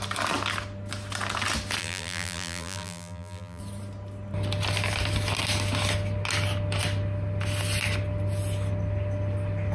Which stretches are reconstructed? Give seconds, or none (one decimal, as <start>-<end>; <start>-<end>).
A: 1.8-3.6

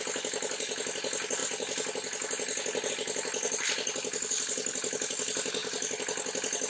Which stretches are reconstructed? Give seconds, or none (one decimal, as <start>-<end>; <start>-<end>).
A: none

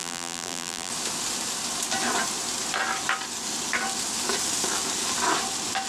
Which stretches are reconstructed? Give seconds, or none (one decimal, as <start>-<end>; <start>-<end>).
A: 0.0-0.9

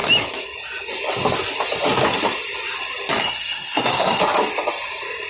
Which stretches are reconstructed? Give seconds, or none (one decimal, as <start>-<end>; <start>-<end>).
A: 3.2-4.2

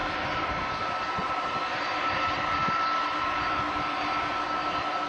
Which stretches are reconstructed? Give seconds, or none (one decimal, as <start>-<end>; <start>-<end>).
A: 0.0-0.7; 1.2-4.3

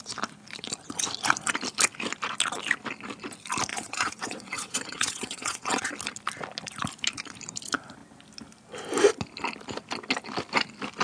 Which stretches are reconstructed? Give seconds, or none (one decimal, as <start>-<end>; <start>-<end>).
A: 3.7-5.9

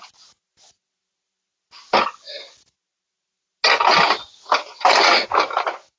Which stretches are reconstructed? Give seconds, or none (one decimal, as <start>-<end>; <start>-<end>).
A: none

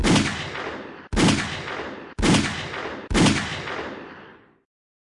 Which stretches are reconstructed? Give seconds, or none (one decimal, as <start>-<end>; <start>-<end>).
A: none